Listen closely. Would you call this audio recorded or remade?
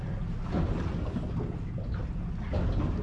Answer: recorded